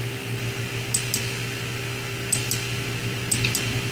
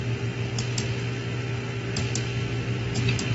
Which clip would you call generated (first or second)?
second